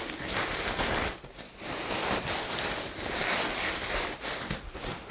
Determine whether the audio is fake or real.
fake